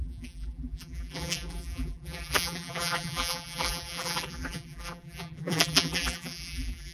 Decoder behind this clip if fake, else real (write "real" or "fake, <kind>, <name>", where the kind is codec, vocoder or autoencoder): fake, vocoder, BigVGAN v2